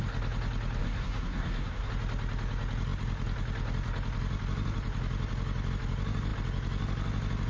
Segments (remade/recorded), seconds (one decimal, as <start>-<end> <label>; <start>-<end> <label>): 0.0-0.8 recorded; 0.8-1.9 remade; 1.9-7.5 recorded